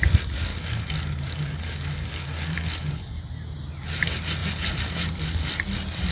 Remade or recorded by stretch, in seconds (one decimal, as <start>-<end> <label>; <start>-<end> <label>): 0.0-0.5 recorded; 0.5-3.2 remade; 3.2-6.1 recorded